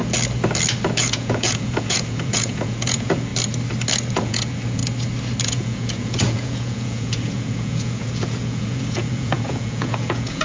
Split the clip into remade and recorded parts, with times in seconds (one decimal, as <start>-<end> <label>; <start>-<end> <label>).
0.0-1.0 recorded; 1.0-3.3 remade; 3.3-4.1 recorded; 4.1-4.8 remade; 4.8-5.4 recorded; 5.4-10.4 remade